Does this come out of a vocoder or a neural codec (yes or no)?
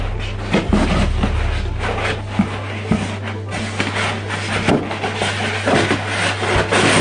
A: no